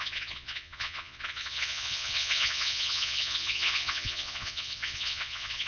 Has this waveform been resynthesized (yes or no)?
yes